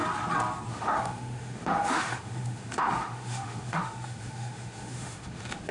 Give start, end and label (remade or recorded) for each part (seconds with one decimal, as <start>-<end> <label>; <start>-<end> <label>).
0.0-0.7 recorded; 0.7-5.7 remade